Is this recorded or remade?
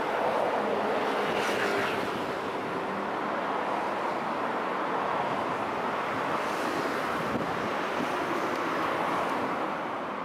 recorded